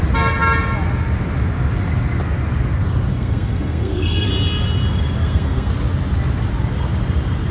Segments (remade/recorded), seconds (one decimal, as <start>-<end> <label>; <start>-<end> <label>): 0.0-3.1 recorded; 3.1-4.3 remade; 4.3-5.2 recorded; 5.2-5.7 remade; 5.7-7.5 recorded